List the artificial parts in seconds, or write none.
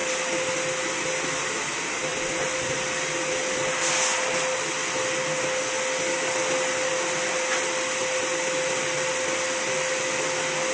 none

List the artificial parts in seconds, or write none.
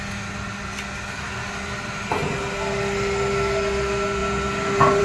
none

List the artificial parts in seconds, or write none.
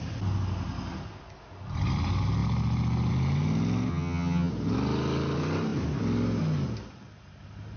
3.9-4.5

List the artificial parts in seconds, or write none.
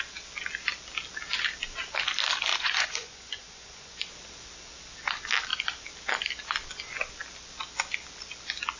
2.5-4.1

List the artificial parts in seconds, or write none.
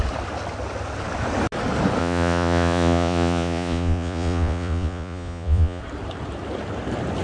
2.0-5.8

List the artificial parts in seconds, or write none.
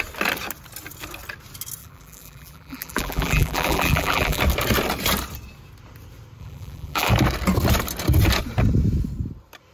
1.8-4.4; 6.4-7.1